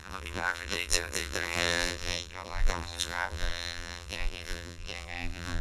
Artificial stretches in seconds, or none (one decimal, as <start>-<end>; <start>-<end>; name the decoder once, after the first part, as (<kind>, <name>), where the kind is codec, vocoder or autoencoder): 0.0-5.6 (vocoder, BigVGAN v2)